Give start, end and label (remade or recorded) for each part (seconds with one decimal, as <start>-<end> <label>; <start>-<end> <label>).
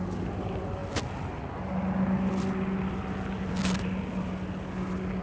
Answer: 0.0-5.2 recorded